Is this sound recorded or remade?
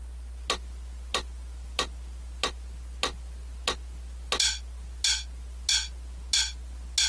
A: recorded